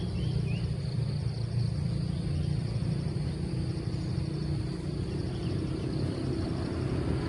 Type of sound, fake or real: real